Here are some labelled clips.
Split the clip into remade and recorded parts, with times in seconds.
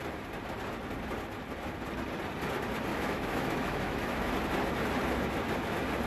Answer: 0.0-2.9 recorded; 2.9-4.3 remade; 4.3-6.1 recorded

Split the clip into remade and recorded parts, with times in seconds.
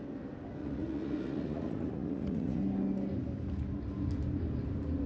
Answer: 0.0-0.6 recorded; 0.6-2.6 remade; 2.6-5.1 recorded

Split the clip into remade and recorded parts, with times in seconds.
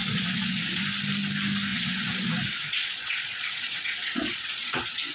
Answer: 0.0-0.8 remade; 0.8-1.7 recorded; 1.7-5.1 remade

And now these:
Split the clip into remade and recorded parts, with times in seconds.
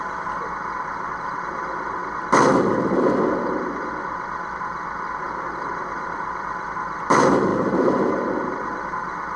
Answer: 0.0-2.0 remade; 2.0-5.6 recorded; 5.6-9.4 remade